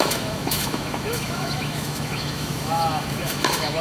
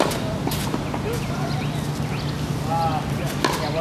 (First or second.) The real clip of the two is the second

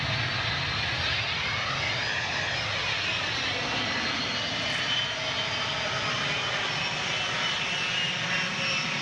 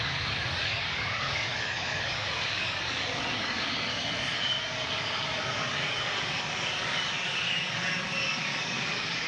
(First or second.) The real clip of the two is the first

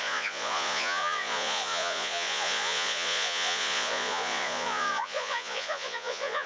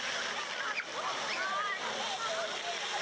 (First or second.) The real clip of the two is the second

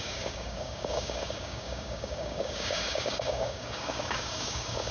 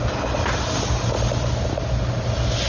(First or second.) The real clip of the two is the second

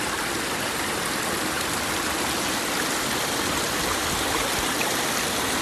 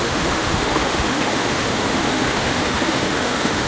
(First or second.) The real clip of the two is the first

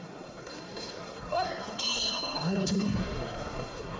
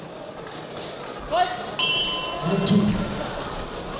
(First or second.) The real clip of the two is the second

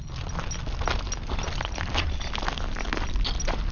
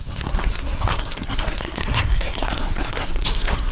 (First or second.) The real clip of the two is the first